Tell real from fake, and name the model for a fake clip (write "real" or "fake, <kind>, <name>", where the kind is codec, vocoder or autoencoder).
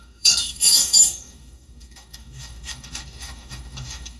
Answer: fake, codec, DAC